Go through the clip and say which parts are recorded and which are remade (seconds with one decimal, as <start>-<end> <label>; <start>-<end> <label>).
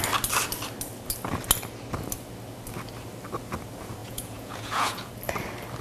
0.0-4.0 recorded; 4.0-5.1 remade; 5.1-5.8 recorded